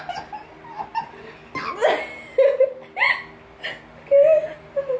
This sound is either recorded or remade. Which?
recorded